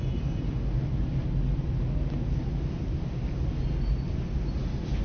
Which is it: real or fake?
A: real